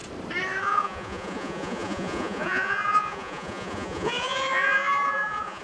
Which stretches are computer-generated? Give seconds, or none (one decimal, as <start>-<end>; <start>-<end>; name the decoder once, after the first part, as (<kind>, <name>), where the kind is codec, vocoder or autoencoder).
0.6-5.6 (vocoder, Vocos)